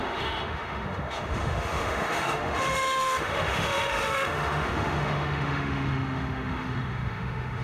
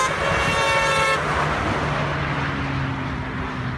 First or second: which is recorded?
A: second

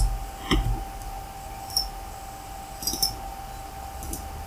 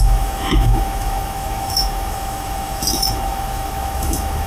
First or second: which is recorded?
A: first